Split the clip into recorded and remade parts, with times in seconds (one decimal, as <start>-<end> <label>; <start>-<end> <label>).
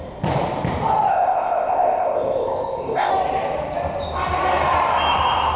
0.0-1.1 recorded; 1.1-3.1 remade; 3.1-5.6 recorded